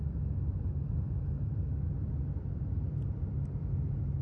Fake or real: real